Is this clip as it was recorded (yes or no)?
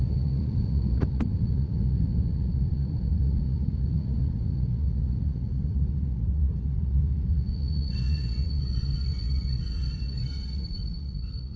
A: no